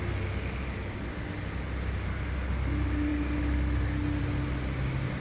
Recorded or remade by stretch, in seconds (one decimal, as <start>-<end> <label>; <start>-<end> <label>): 0.0-5.2 recorded